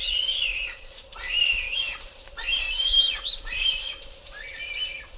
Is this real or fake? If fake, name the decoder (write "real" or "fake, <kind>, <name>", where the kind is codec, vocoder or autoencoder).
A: fake, vocoder, BigVGAN v2